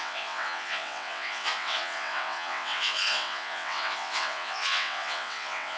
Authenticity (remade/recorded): remade